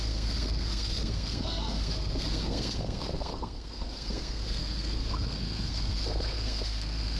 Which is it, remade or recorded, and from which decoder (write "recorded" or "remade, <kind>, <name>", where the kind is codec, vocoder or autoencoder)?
remade, codec, SNAC